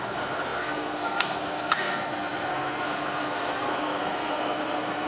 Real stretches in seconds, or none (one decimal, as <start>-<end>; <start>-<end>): none